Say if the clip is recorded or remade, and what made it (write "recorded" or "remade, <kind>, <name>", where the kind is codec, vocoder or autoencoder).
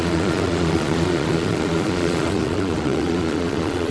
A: remade, vocoder, Vocos